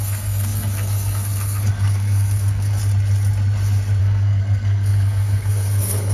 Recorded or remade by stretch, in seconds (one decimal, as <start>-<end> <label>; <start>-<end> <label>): 0.0-2.8 remade; 2.8-4.0 recorded; 4.0-6.1 remade

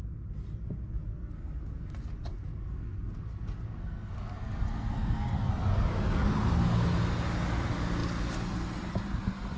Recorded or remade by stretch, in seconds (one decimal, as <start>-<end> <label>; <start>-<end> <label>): 0.0-1.1 recorded; 1.1-1.9 remade; 1.9-2.3 recorded; 2.3-5.5 remade; 5.5-9.6 recorded

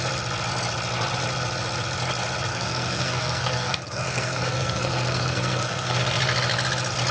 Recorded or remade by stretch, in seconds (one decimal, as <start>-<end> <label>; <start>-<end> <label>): 0.0-2.5 recorded; 2.5-6.0 remade; 6.0-7.1 recorded

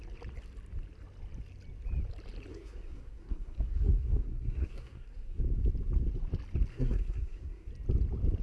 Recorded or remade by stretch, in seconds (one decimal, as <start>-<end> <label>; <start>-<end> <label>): 0.0-2.5 recorded; 2.5-5.4 remade; 5.4-6.7 recorded; 6.7-7.7 remade; 7.7-8.4 recorded

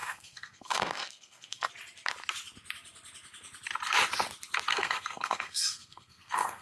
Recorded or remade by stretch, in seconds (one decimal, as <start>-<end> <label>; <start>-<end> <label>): 0.0-1.7 remade; 1.7-4.7 recorded; 4.7-6.6 remade

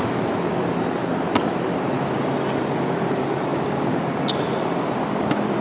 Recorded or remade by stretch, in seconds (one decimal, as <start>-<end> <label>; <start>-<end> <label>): 0.0-5.6 recorded

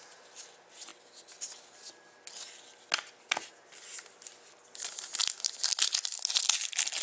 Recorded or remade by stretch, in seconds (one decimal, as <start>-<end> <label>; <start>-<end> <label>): 0.0-7.0 recorded